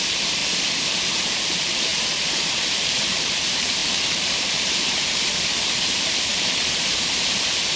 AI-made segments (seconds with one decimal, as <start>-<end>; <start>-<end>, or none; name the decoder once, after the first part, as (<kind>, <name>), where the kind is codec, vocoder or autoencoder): 0.0-0.4 (vocoder, BigVGAN v2); 1.0-7.8